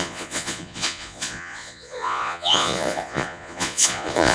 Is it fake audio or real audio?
fake